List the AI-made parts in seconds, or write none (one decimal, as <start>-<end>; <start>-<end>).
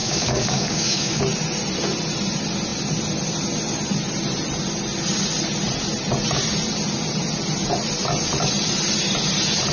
0.0-1.2